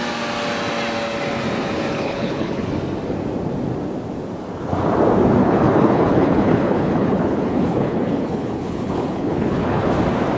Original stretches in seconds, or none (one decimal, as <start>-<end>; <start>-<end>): 0.0-1.9; 2.7-5.4; 9.9-10.4

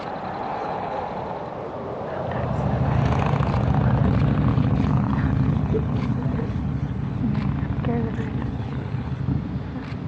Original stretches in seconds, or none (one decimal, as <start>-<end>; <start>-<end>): 0.0-0.5; 1.0-4.5; 7.2-8.4; 9.2-10.1

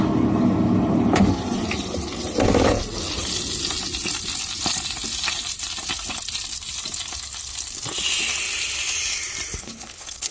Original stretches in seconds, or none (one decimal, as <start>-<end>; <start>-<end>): 0.0-9.6